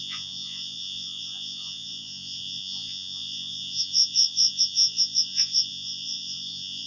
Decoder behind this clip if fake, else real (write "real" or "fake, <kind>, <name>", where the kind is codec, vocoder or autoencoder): fake, vocoder, Vocos